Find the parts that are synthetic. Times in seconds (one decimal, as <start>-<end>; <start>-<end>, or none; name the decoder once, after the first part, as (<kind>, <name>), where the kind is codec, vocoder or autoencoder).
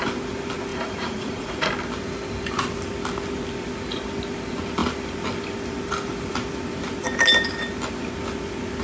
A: 0.7-1.7 (vocoder, Vocos)